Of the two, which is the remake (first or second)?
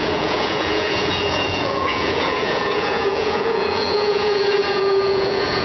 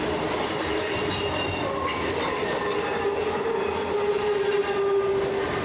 first